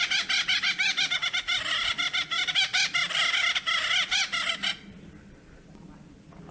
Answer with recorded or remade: recorded